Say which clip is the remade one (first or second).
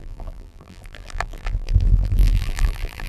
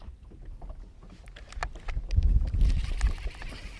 first